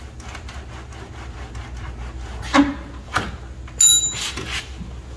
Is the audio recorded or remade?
recorded